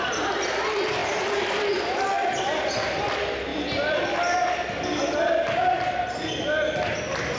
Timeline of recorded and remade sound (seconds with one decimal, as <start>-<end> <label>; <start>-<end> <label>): 0.0-7.4 recorded

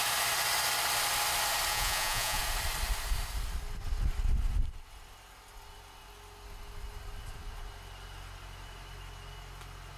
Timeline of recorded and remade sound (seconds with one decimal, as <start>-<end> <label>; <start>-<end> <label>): 0.0-1.7 recorded; 1.7-2.4 remade; 2.4-10.0 recorded